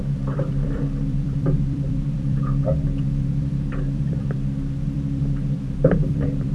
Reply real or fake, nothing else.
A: fake